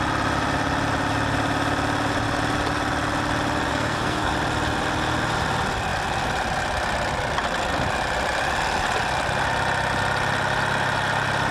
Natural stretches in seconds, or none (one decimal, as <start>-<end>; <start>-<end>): 0.0-3.7; 4.3-11.5